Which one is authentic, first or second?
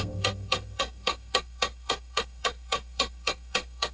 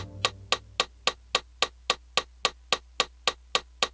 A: second